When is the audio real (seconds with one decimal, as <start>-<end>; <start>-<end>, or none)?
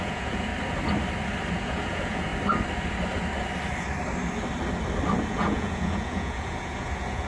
0.5-1.5; 2.3-5.3